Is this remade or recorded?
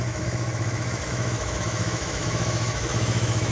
remade